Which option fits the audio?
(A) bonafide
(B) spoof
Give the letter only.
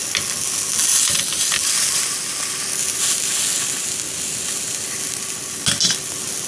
A